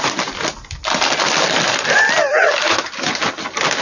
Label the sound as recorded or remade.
recorded